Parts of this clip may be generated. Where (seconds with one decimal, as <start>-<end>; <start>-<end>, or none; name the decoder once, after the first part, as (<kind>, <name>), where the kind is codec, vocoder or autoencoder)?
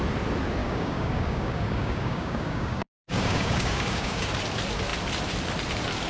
0.6-4.3 (codec, DAC)